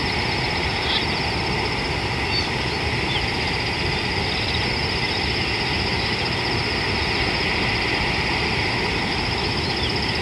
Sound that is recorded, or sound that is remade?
recorded